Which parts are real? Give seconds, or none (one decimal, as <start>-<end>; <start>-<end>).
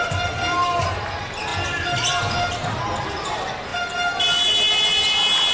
0.0-5.5